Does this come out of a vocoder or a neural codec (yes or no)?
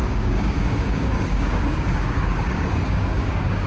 yes